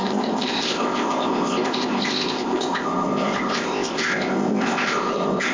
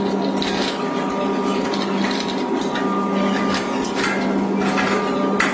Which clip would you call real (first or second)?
second